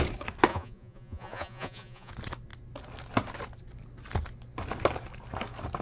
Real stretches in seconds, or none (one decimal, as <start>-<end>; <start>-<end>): 0.0-0.5; 2.1-5.8